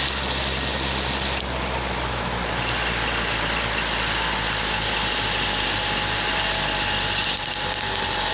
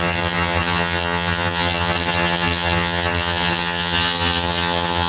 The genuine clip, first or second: first